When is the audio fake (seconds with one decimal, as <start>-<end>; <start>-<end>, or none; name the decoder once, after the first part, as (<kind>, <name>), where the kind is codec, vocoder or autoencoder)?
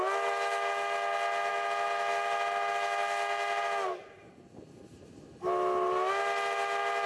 none